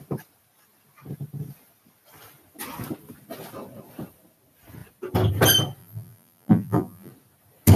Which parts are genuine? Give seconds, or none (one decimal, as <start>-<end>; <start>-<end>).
0.0-5.8; 7.1-7.8